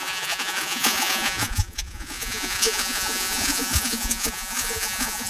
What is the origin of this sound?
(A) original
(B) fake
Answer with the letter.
B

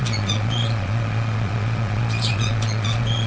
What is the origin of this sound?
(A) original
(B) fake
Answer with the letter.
B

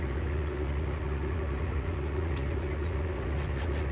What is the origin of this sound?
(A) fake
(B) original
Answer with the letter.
A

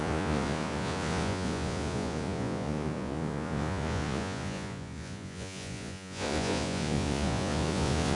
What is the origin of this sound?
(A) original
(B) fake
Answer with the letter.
B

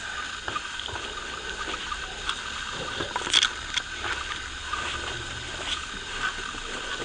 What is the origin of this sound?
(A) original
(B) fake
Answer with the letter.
A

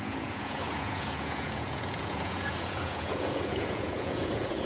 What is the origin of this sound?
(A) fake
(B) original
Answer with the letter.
A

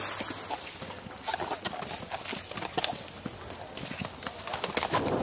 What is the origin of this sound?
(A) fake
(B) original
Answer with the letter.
B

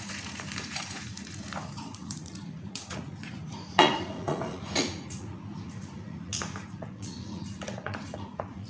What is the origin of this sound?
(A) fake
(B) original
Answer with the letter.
A